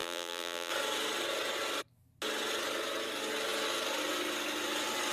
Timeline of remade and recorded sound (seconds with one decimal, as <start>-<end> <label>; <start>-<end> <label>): 0.0-0.7 remade; 0.7-5.1 recorded

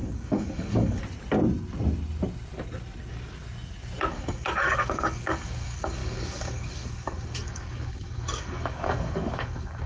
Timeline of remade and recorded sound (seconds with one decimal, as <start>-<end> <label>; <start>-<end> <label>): 0.0-1.0 remade; 1.0-4.1 recorded; 4.1-9.9 remade

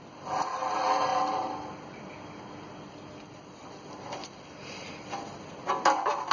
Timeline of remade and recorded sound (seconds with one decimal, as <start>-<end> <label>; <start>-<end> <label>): 0.0-1.1 recorded; 1.1-4.9 remade; 4.9-6.3 recorded

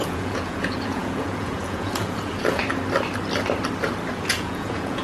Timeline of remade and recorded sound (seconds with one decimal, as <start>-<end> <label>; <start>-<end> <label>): 0.0-2.6 remade; 2.6-4.1 recorded; 4.1-5.0 remade

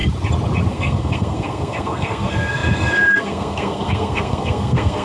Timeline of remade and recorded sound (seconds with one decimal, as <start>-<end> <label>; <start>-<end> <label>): 0.0-0.7 recorded; 0.7-5.0 remade